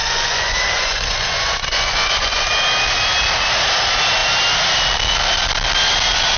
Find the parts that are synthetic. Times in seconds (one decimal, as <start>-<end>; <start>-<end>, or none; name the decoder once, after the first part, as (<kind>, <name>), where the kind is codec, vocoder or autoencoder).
0.0-2.5 (vocoder, Vocos)